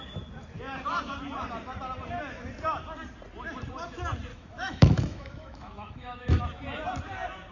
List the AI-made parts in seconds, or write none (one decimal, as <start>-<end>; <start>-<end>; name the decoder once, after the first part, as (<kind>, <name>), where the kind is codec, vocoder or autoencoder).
4.3-6.4 (autoencoder, DAC-VAE)